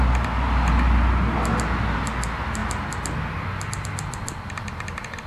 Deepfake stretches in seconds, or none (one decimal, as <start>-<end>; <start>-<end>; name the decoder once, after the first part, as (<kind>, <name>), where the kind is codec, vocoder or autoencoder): none

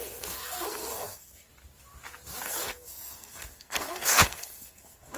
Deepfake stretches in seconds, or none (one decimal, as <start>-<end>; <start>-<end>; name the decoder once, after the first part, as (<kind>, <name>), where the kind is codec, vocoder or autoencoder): 0.0-1.5 (codec, SNAC); 2.4-5.2

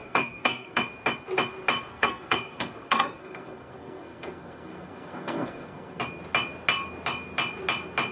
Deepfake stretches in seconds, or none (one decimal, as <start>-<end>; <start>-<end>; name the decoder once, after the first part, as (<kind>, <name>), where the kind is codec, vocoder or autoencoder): 0.0-0.8 (codec, SNAC); 1.9-6.0

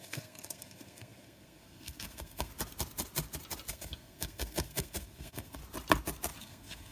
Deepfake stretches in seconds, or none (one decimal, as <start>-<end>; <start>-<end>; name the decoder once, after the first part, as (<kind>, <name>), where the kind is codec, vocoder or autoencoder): 0.0-2.5 (codec, SNAC); 3.7-5.6; 6.4-6.9

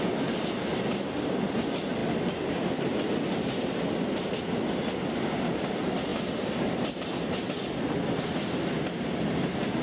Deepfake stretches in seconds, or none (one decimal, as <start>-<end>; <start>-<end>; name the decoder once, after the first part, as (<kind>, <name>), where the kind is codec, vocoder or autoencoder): none